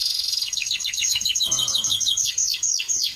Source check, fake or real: fake